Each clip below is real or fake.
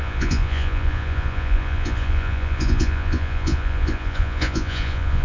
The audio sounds fake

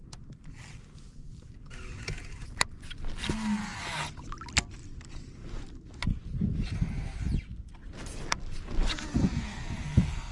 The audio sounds real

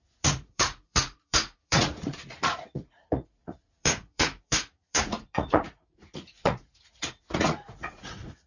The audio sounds fake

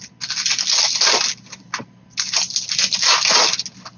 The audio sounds real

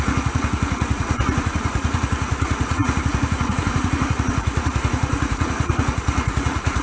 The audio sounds fake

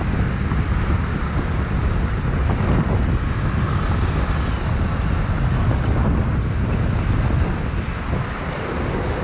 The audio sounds real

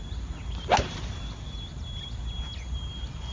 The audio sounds real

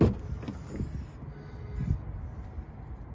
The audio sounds real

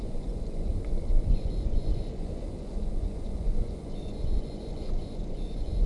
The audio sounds fake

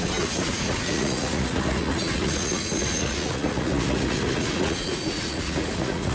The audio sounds fake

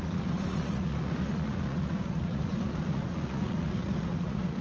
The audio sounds fake